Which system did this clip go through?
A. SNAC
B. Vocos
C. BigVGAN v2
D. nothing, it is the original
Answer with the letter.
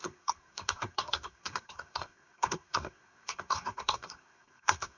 A